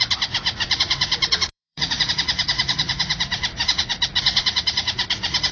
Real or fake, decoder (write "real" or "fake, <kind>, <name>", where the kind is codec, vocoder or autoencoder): fake, vocoder, Vocos